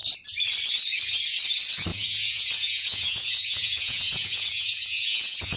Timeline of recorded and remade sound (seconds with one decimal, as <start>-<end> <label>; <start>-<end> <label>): 0.0-1.9 recorded; 1.9-5.6 remade